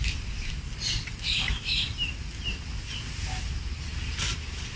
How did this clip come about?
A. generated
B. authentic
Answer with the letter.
B